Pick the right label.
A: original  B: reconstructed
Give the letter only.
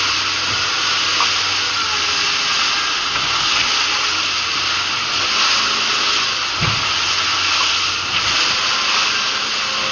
A